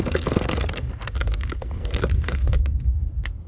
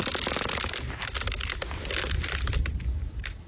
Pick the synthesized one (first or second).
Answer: first